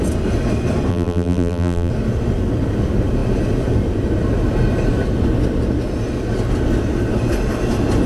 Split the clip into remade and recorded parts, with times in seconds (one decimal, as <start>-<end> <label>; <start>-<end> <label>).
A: 0.0-0.9 recorded; 0.9-1.9 remade; 1.9-8.1 recorded

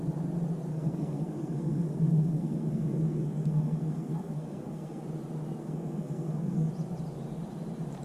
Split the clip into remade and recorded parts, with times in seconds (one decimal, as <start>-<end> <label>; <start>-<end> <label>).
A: 0.0-0.7 recorded; 0.7-5.0 remade; 5.0-5.6 recorded; 5.6-6.7 remade; 6.7-8.0 recorded

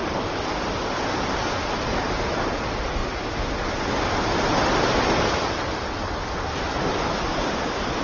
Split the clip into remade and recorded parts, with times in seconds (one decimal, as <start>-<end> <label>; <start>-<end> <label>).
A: 0.0-8.0 recorded

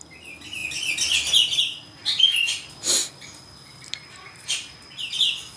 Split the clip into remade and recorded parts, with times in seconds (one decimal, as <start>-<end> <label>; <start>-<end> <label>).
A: 0.0-5.6 recorded

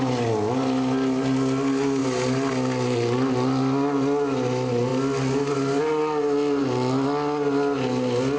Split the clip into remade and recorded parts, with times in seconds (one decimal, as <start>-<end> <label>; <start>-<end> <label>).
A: 0.0-2.0 recorded; 2.0-2.5 remade; 2.5-8.4 recorded

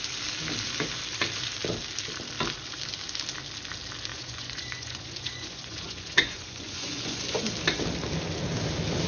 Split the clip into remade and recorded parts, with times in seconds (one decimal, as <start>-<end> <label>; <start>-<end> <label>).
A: 0.0-4.1 recorded; 4.1-7.5 remade; 7.5-9.1 recorded